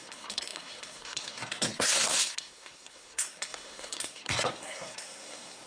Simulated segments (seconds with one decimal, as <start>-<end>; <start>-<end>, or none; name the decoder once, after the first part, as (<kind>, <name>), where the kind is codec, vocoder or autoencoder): 0.0-5.7 (codec, SNAC)